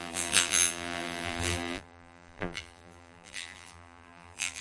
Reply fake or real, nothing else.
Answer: fake